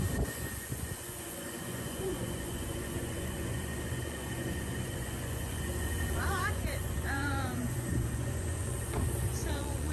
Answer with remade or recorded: remade